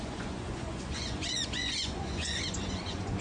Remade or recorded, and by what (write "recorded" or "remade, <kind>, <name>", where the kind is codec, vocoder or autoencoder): remade, vocoder, Vocos